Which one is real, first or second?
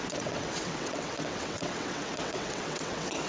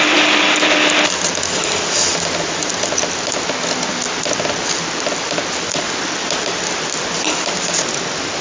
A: second